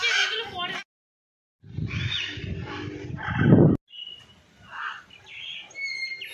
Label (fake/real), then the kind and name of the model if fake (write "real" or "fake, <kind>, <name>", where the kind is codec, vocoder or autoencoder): real